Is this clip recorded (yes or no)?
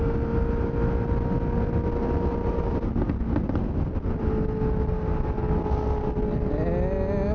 yes